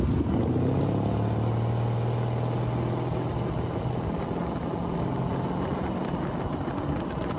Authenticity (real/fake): real